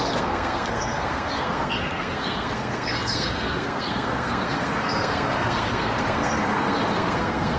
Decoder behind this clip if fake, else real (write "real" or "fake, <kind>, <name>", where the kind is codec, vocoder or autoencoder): fake, codec, SNAC